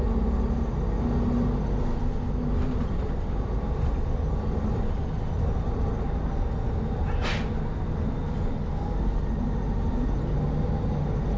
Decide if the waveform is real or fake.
real